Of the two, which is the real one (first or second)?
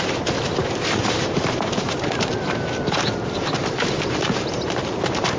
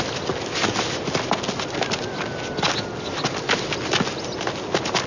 second